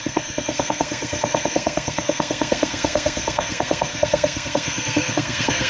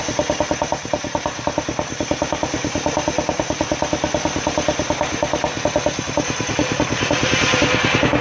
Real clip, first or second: second